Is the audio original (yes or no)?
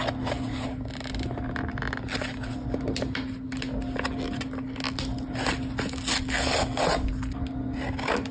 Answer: yes